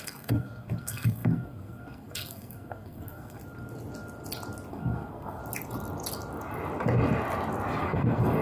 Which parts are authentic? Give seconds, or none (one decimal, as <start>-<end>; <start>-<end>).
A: 3.4-4.7; 5.4-7.8